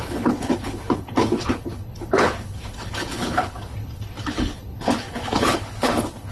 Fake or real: fake